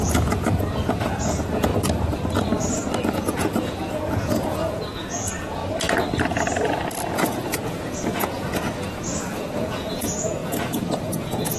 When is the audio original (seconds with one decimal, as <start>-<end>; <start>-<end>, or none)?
1.7-3.1; 5.6-7.1